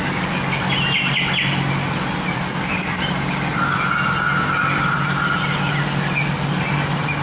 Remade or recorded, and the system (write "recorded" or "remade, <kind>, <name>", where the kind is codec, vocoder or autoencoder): recorded